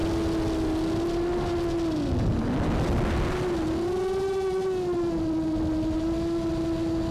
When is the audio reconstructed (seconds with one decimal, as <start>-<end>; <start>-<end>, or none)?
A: none